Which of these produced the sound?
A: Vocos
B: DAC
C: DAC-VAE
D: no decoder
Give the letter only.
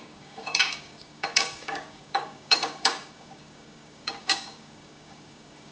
B